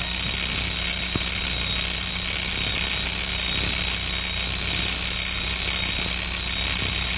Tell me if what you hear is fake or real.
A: real